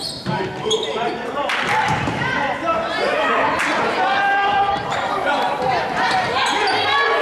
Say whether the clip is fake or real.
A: fake